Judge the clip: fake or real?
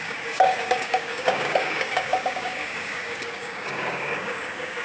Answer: fake